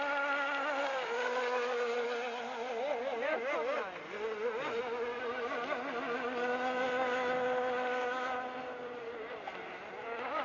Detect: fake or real real